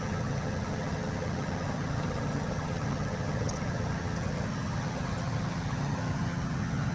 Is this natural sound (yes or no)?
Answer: no